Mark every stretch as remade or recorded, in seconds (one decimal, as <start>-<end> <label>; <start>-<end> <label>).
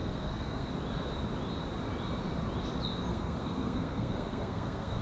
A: 0.0-0.7 remade; 0.7-3.1 recorded; 3.1-5.0 remade